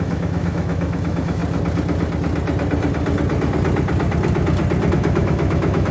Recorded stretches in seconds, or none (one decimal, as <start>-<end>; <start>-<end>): 1.4-4.9